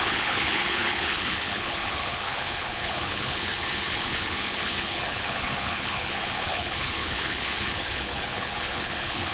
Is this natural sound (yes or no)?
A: no